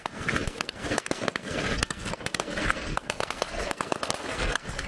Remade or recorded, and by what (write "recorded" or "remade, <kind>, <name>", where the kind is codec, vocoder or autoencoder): remade, codec, SNAC